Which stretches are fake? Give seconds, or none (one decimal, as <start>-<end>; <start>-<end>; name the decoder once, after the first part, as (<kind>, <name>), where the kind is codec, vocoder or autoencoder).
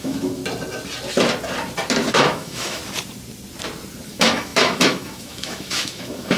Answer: 0.0-0.4 (autoencoder, DAC-VAE); 2.1-2.8; 4.1-6.4